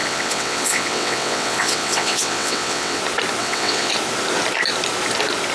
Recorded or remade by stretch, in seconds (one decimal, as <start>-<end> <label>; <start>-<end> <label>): 0.0-3.0 remade; 3.0-3.4 recorded; 3.4-3.9 remade; 3.9-5.5 recorded